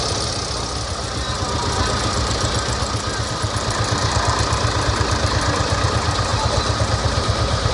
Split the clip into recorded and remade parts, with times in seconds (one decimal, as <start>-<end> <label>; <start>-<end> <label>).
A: 0.0-7.7 recorded